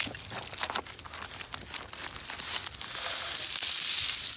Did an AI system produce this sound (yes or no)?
no